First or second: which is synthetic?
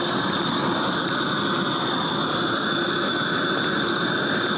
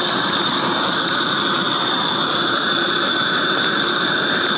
second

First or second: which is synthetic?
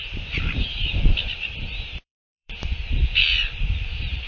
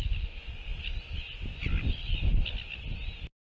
first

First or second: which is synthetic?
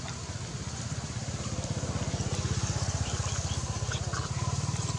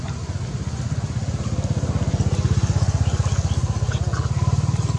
first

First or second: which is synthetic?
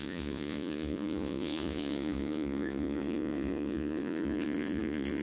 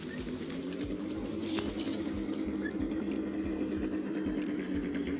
first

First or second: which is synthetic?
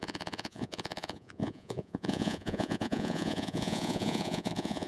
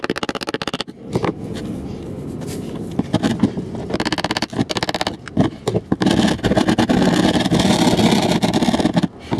first